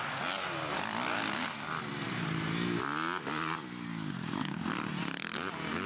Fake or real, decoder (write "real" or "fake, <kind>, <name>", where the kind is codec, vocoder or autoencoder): real